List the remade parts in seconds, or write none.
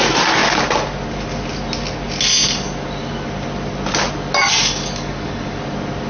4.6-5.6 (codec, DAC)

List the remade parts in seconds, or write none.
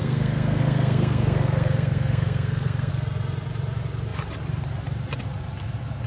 0.0-2.9 (codec, SNAC)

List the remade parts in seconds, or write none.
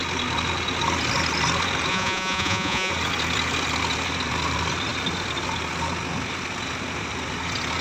1.9-2.9 (vocoder, Vocos)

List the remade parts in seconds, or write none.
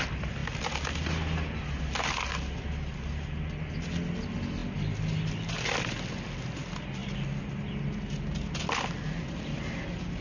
none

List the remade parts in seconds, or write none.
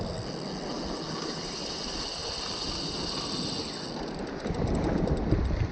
none